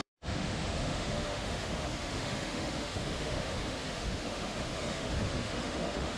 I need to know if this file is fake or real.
fake